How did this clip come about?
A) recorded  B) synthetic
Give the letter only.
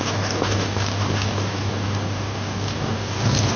B